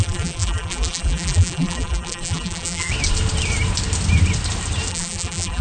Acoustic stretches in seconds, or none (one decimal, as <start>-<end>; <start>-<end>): 2.9-4.9